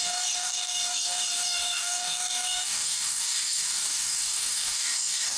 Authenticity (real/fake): fake